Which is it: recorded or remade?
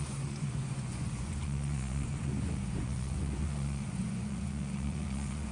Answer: remade